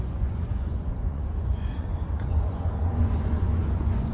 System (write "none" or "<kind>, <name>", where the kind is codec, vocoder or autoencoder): vocoder, Vocos